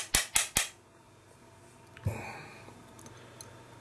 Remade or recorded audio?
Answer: recorded